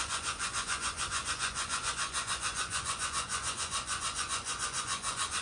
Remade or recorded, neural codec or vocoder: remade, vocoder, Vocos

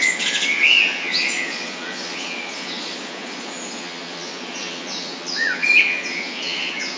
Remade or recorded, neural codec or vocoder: remade, vocoder, Vocos